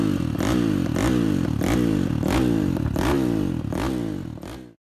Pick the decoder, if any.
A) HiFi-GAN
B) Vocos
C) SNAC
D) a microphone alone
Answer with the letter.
D